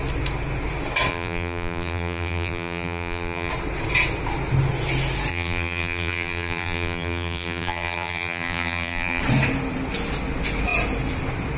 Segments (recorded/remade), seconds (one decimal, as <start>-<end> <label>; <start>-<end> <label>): 0.0-1.1 recorded; 1.1-3.5 remade; 3.5-5.3 recorded; 5.3-9.2 remade; 9.2-11.6 recorded